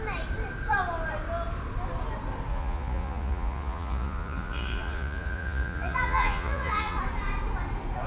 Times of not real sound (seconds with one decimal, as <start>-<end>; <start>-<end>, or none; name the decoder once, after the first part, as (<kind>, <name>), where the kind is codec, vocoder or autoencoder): 2.5-7.0 (vocoder, Vocos)